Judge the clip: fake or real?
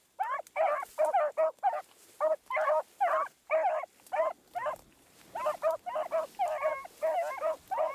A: real